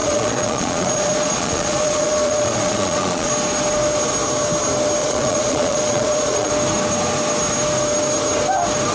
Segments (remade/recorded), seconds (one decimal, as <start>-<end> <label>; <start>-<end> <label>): 0.0-3.3 remade; 3.3-5.0 recorded; 5.0-6.5 remade; 6.5-8.9 recorded